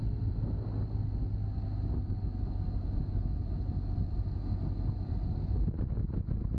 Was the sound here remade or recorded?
recorded